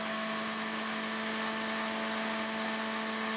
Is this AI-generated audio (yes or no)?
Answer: no